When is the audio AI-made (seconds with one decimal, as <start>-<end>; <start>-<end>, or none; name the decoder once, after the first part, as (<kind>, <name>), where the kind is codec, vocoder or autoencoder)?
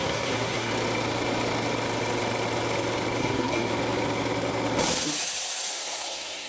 0.0-0.7 (codec, SNAC); 3.2-3.7; 5.7-6.5